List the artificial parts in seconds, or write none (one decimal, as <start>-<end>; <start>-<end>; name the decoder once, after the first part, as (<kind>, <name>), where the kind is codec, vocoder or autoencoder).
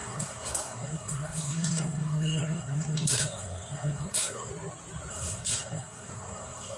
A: 0.0-4.5 (codec, SNAC); 5.1-6.8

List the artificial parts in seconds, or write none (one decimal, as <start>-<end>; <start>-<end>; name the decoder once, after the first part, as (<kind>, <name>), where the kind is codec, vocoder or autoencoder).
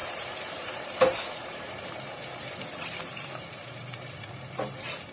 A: 0.0-5.1 (vocoder, BigVGAN v2)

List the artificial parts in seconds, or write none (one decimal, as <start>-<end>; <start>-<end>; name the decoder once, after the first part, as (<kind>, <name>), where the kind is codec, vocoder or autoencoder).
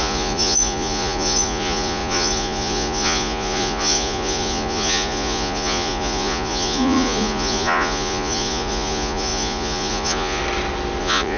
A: 0.0-10.4 (vocoder, Vocos); 11.0-11.4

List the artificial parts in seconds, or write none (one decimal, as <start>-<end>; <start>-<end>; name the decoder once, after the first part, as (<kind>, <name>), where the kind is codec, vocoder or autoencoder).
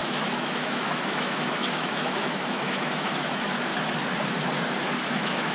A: 0.0-3.7 (autoencoder, DAC-VAE); 5.1-5.5